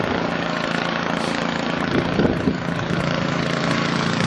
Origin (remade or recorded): remade